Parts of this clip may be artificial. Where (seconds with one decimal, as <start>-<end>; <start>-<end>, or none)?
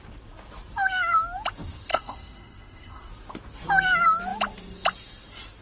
1.9-3.1